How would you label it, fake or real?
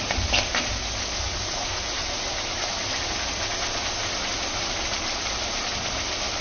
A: real